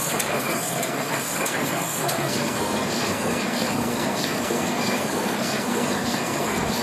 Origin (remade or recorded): remade